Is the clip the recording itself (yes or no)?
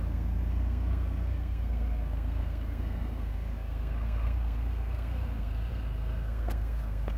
no